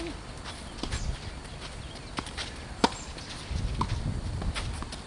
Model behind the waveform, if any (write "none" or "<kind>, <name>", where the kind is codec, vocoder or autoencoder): none